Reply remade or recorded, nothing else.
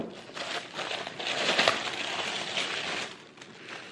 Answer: recorded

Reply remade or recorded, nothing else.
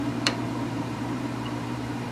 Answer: remade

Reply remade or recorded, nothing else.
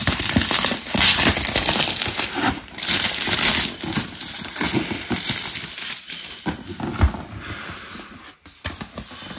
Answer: recorded